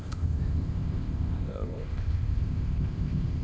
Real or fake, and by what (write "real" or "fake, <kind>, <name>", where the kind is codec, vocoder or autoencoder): fake, codec, ZipCodec